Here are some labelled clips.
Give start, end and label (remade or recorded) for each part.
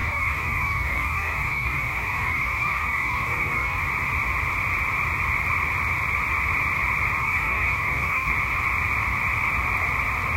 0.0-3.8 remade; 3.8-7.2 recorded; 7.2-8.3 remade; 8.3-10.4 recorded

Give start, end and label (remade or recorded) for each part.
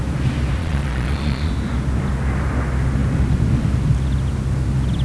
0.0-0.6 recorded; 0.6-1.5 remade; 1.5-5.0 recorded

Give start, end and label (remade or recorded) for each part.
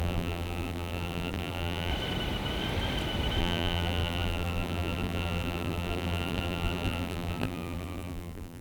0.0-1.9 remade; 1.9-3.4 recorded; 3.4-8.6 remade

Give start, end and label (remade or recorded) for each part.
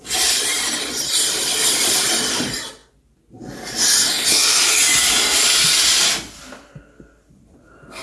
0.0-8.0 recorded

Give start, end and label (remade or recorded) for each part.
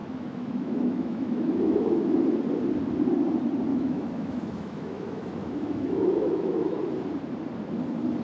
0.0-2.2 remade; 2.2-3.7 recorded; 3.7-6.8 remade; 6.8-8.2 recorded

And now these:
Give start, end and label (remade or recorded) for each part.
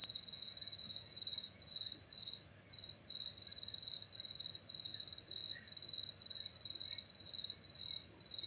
0.0-1.7 remade; 1.7-8.5 recorded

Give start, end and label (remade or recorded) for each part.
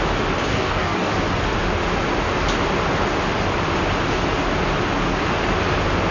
0.0-0.5 recorded; 0.5-1.1 remade; 1.1-6.1 recorded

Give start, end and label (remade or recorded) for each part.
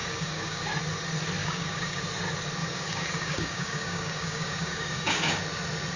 0.0-0.6 remade; 0.6-1.4 recorded; 1.4-2.0 remade; 2.0-2.6 recorded; 2.6-5.4 remade; 5.4-6.0 recorded